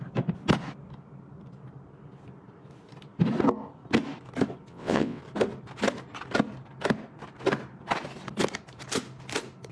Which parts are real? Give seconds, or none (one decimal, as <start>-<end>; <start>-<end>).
0.0-4.7; 5.2-9.7